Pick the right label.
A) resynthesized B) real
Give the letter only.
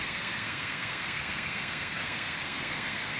A